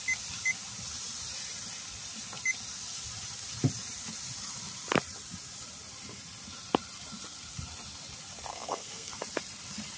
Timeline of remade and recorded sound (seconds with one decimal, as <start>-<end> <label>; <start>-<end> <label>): 0.0-8.5 recorded; 8.5-9.1 remade; 9.1-10.0 recorded